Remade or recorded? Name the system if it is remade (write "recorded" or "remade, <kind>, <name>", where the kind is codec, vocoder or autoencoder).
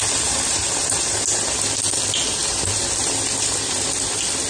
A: recorded